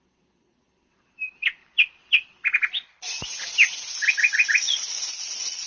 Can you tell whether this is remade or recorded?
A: recorded